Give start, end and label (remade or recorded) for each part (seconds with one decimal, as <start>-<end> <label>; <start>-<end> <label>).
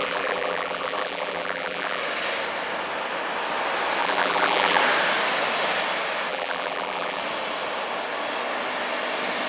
0.0-2.0 remade; 2.0-4.0 recorded; 4.0-4.8 remade; 4.8-6.3 recorded; 6.3-7.2 remade; 7.2-9.5 recorded